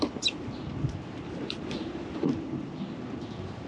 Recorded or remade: recorded